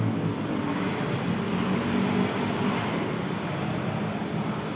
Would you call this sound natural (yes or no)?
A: yes